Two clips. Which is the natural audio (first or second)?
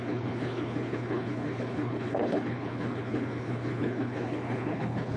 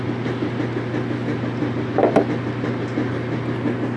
second